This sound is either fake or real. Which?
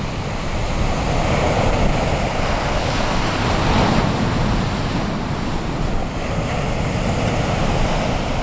real